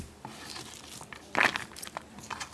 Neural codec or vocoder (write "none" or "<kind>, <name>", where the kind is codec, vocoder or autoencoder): none